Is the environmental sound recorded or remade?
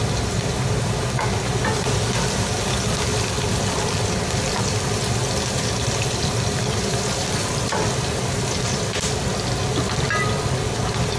recorded